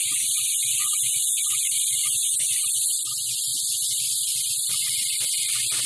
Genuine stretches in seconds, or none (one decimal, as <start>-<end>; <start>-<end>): 0.0-5.9